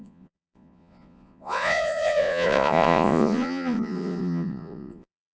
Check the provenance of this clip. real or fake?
fake